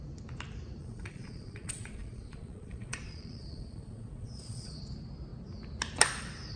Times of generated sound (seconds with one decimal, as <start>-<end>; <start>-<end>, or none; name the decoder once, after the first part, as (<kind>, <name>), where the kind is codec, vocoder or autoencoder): 0.8-4.8 (vocoder, Vocos)

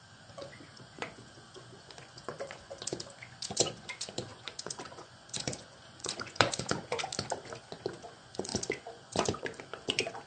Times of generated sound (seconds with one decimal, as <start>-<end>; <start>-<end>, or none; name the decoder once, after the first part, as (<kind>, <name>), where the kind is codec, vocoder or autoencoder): 0.0-7.1 (vocoder, Vocos); 7.7-10.3

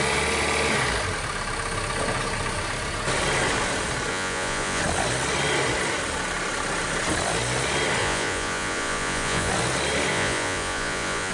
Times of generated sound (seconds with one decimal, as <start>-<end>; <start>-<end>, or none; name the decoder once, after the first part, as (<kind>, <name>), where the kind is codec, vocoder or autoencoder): 4.1-4.8 (vocoder, Vocos); 8.0-9.5; 10.1-11.3

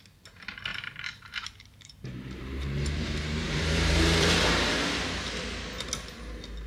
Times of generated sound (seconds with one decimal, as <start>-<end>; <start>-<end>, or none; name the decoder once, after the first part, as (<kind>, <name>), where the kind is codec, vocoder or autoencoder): 0.7-4.7 (vocoder, BigVGAN v2)

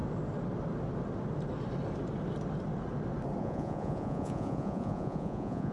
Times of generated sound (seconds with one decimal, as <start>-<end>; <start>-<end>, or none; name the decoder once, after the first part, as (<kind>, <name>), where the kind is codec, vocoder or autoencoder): 3.4-5.7 (vocoder, Vocos)

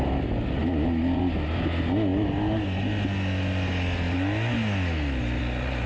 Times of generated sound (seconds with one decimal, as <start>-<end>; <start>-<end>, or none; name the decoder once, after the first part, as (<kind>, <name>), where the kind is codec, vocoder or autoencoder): 0.6-1.2 (vocoder, BigVGAN v2)